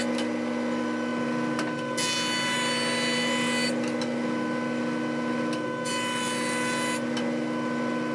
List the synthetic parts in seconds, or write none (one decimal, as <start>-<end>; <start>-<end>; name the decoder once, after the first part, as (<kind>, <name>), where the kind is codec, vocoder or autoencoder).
none